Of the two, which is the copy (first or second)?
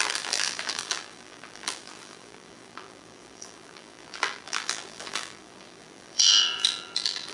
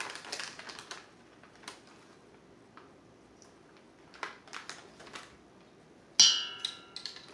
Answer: first